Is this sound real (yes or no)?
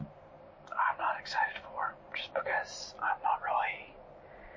yes